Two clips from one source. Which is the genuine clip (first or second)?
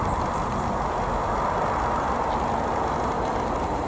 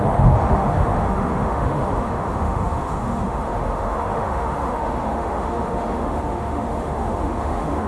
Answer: first